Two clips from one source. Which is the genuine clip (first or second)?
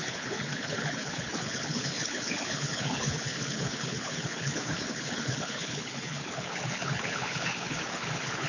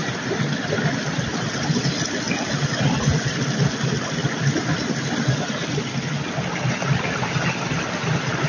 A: second